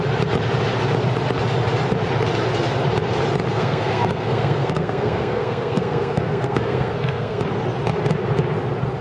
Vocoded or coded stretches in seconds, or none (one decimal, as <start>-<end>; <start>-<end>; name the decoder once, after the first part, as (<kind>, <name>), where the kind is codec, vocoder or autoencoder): 3.5-7.4 (codec, SNAC)